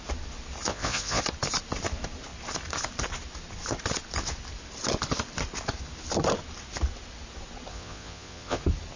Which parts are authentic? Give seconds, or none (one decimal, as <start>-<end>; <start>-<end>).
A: 0.0-0.7; 1.2-7.7; 8.6-9.0